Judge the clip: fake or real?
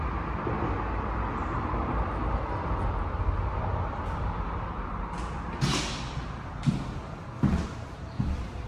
real